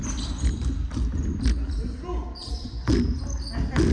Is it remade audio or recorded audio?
recorded